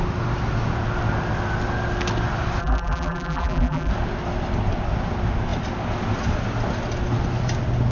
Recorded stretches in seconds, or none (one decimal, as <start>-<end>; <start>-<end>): 0.0-2.6; 3.9-7.9